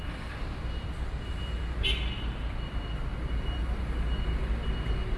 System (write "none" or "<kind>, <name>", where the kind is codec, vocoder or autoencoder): none